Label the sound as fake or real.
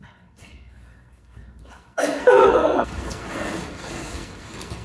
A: fake